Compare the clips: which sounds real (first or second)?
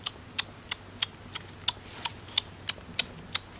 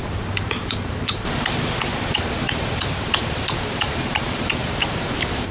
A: first